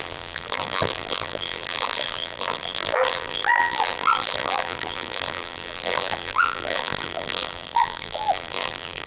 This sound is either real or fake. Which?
fake